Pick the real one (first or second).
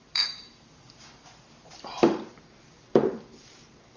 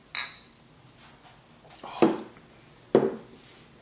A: second